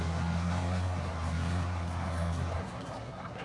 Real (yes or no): no